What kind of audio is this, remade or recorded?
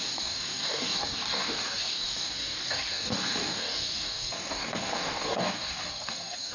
remade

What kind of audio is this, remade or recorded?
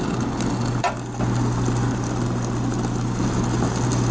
recorded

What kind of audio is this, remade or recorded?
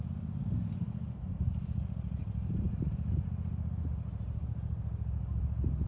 recorded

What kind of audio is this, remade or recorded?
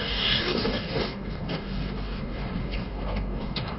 remade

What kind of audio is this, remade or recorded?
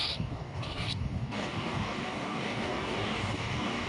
remade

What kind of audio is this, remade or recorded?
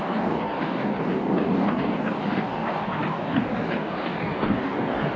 remade